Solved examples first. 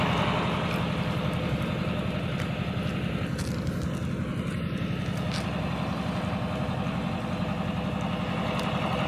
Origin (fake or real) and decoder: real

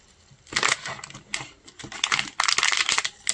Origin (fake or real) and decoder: real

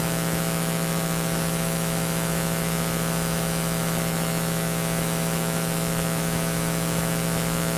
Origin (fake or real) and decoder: fake, autoencoder, DAC-VAE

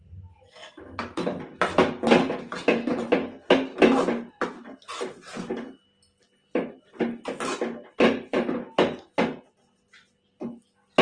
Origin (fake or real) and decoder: real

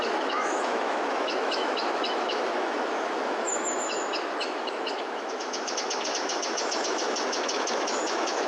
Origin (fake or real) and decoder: fake, autoencoder, DAC-VAE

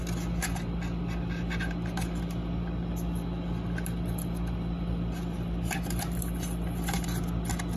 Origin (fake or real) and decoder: real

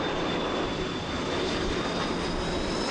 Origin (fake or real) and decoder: real